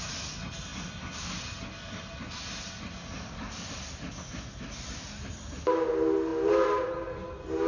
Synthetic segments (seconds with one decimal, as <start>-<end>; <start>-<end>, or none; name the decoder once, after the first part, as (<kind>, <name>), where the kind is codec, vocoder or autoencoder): none